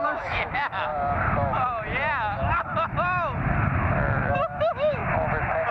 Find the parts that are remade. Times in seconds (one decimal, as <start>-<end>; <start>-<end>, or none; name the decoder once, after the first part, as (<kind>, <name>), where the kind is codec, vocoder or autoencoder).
0.0-0.9 (autoencoder, DAC-VAE); 4.3-5.0